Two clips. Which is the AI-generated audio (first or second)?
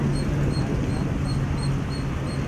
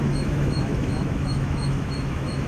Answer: second